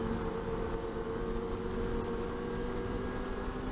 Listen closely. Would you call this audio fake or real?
real